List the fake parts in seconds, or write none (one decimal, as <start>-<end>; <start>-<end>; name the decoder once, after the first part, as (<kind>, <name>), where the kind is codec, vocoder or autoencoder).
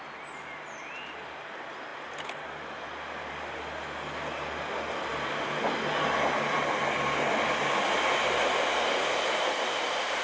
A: none